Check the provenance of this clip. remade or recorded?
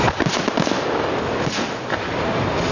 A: recorded